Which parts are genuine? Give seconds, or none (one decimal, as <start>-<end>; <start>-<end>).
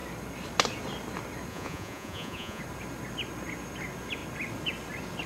0.0-1.5; 2.6-5.3